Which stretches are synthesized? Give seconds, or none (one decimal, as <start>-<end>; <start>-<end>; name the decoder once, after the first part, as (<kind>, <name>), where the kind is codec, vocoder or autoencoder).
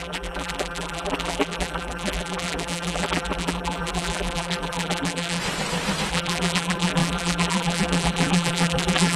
0.0-5.4 (vocoder, BigVGAN v2); 6.1-9.2